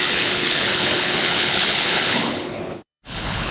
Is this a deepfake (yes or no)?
yes